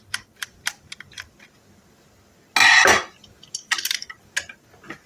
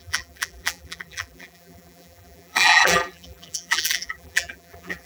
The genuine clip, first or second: first